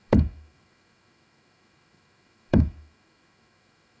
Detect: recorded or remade remade